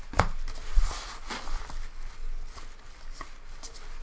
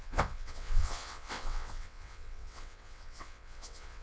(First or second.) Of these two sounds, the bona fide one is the first